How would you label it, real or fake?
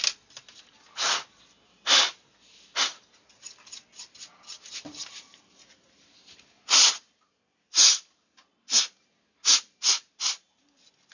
real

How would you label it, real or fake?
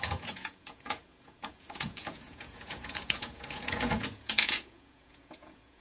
fake